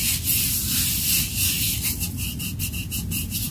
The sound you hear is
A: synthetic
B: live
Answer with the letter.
B